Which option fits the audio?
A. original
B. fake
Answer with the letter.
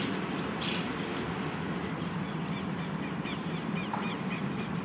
B